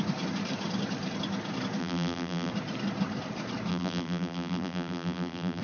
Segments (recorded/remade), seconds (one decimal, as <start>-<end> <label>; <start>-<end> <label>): 0.0-1.8 recorded; 1.8-2.5 remade; 2.5-3.7 recorded; 3.7-5.6 remade